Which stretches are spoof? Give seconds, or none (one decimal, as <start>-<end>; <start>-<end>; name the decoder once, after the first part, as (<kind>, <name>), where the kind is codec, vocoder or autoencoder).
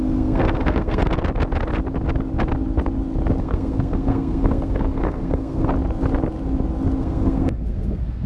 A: 0.0-1.0 (codec, SNAC); 3.4-5.7; 7.0-8.3